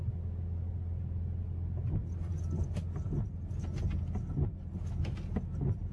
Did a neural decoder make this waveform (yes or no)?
no